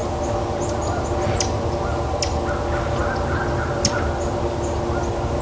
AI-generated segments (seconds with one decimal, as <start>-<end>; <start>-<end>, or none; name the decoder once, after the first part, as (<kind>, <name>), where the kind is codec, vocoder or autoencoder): none